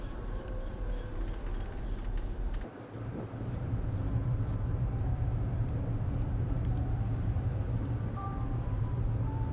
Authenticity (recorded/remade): remade